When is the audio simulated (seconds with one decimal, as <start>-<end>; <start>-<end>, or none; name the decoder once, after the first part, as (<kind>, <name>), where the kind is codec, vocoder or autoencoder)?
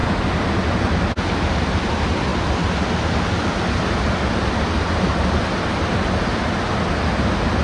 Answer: none